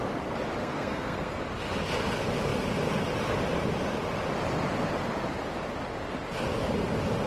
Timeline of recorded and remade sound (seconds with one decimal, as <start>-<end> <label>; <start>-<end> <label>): 0.0-0.6 recorded; 0.6-1.4 remade; 1.4-7.3 recorded

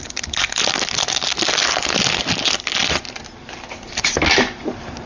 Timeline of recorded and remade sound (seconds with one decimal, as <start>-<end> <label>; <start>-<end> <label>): 0.0-5.1 recorded

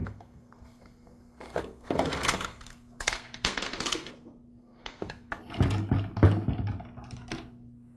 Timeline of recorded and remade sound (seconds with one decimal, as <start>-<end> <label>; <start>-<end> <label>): 0.0-4.1 remade; 4.1-4.6 recorded; 4.6-5.3 remade; 5.3-8.0 recorded